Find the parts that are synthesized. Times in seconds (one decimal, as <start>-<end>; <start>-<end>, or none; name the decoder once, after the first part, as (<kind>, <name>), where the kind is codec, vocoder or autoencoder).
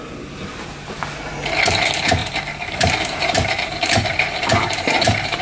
2.2-5.4 (vocoder, BigVGAN v2)